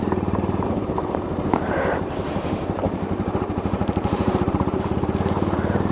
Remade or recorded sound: remade